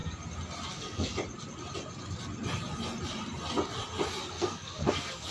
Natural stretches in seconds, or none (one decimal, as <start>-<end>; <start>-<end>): 0.0-0.7; 1.1-4.3